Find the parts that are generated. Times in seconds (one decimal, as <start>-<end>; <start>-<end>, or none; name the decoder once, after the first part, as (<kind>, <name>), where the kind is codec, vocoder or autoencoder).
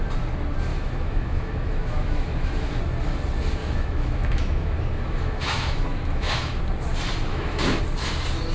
0.7-2.8 (autoencoder, DAC-VAE); 3.6-6.6; 7.3-7.8